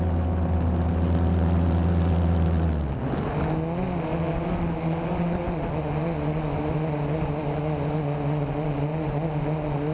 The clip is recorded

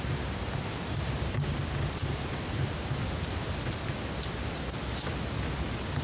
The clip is recorded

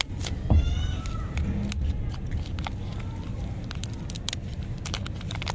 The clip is recorded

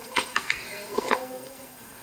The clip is remade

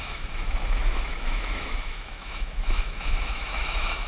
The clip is remade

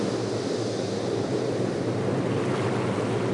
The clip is recorded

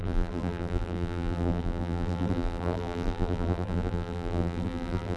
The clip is remade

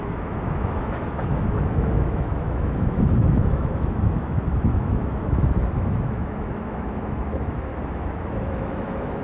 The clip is remade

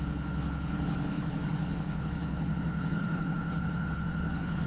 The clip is remade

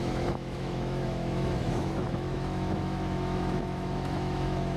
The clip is remade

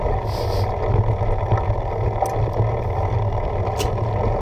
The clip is recorded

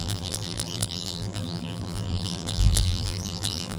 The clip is remade